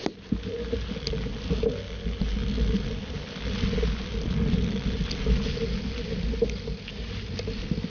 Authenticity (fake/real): real